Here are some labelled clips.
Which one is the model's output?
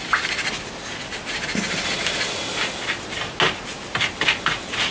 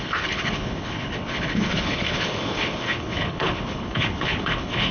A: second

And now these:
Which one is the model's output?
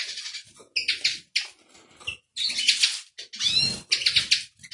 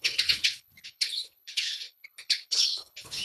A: second